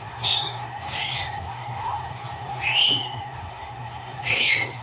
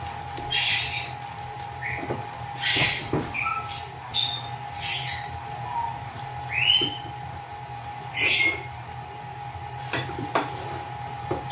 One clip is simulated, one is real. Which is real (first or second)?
second